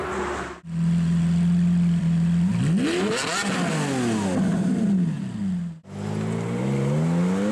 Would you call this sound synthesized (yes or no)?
no